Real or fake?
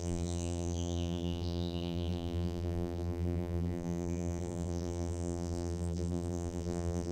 fake